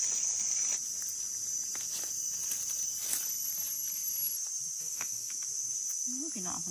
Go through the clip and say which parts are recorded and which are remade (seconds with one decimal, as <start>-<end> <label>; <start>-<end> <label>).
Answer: 0.0-4.8 recorded; 4.8-5.3 remade; 5.3-6.7 recorded